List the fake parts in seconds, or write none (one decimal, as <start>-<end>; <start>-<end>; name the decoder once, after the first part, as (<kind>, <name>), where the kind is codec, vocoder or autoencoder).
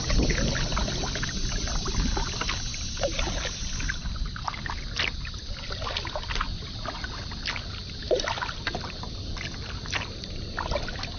none